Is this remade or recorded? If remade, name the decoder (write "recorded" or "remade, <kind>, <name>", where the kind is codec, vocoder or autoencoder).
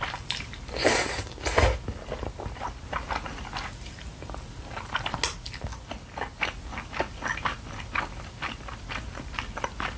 recorded